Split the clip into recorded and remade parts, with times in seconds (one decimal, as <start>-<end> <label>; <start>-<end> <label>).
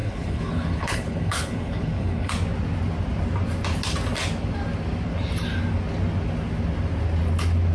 0.0-2.3 remade; 2.3-7.7 recorded